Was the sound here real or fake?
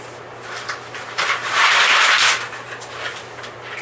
real